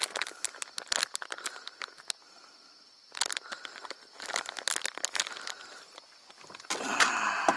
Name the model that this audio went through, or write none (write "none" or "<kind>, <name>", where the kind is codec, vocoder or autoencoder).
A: none